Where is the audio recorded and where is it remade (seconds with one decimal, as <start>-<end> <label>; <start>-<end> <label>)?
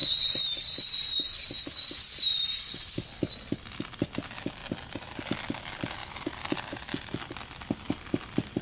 0.0-3.2 remade; 3.2-4.6 recorded; 4.6-5.2 remade; 5.2-6.0 recorded; 6.0-6.9 remade; 6.9-8.6 recorded